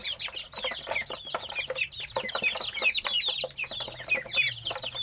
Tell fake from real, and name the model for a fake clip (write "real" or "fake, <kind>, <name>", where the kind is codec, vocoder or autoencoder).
real